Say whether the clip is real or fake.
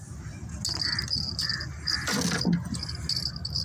real